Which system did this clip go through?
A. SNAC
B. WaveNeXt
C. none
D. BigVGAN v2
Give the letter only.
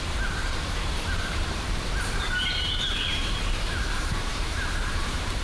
D